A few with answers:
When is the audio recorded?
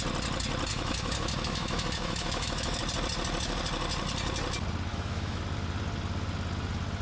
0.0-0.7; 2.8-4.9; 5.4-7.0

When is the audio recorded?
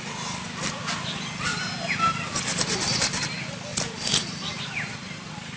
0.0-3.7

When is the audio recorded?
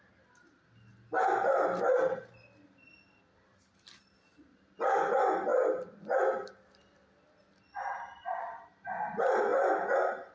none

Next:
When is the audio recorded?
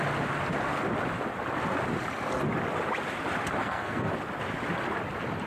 0.0-3.6; 4.1-5.5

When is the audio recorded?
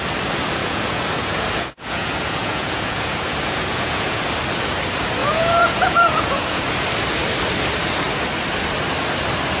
0.0-0.6; 4.2-5.2; 6.6-9.6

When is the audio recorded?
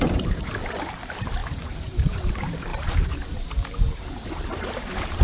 none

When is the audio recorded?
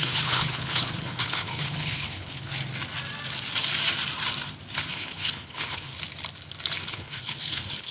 2.5-4.9; 5.9-6.9